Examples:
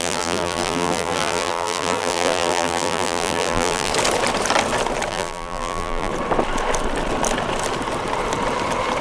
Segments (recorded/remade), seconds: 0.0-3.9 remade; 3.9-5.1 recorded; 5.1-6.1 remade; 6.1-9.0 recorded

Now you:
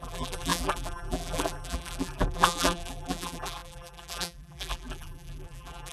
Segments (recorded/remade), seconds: 0.0-5.9 remade

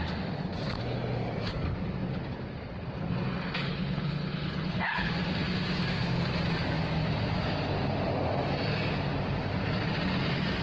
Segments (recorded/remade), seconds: 0.0-3.6 recorded; 3.6-5.1 remade; 5.1-10.6 recorded

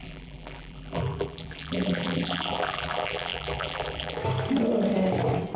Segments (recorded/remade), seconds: 0.0-4.2 remade; 4.2-5.6 recorded

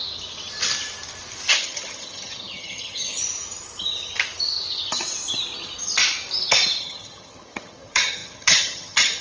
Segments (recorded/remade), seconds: 0.0-1.5 recorded; 1.5-3.2 remade; 3.2-6.8 recorded; 6.8-9.2 remade